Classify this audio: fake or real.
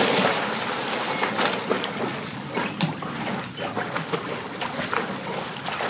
real